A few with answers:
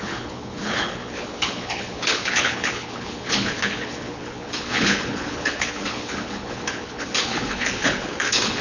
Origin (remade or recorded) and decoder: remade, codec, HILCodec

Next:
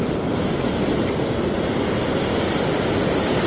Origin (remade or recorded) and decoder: recorded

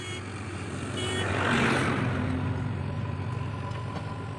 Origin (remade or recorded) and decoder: recorded